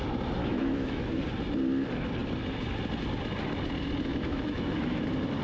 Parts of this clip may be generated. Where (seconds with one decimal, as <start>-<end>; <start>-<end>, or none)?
0.4-1.1; 4.1-5.0